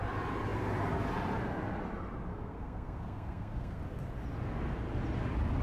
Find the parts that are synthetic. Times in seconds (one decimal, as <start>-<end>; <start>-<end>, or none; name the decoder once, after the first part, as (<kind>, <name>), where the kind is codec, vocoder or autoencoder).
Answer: 2.3-3.8 (codec, SNAC)